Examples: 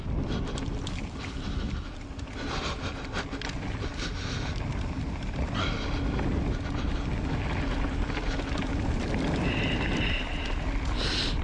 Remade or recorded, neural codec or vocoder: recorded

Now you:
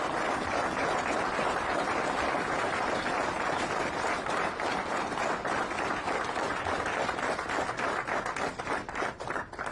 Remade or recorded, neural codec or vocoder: recorded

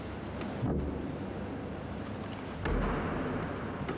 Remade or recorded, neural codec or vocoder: recorded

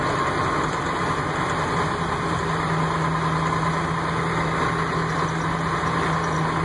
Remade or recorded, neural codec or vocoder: recorded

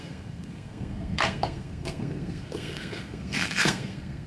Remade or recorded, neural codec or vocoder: remade, codec, SNAC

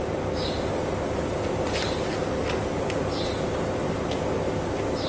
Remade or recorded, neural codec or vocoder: recorded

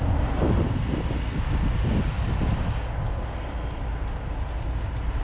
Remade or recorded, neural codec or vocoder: recorded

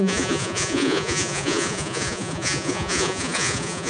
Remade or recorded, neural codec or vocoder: remade, vocoder, Vocos